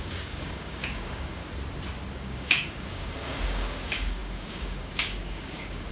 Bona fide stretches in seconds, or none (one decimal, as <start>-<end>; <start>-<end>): 1.4-2.1